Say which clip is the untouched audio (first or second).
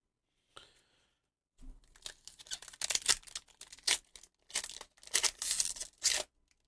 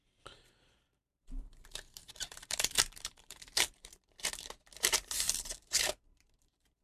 first